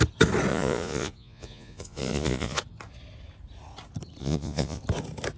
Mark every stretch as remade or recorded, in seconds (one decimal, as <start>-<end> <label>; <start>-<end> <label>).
0.0-0.5 recorded; 0.5-2.6 remade; 2.6-4.2 recorded; 4.2-4.8 remade; 4.8-5.4 recorded